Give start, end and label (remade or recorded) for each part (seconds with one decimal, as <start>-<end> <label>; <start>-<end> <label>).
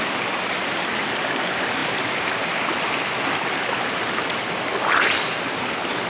0.0-6.1 recorded